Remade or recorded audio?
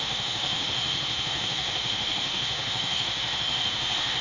remade